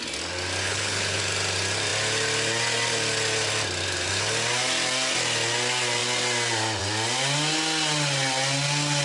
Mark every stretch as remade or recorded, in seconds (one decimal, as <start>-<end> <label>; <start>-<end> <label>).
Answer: 0.0-0.6 recorded; 0.6-1.2 remade; 1.2-9.0 recorded